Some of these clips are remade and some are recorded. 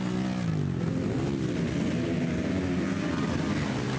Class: recorded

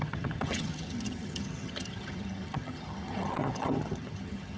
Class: remade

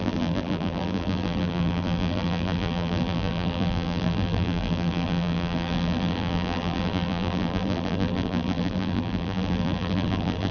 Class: remade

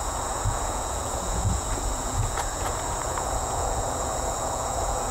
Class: remade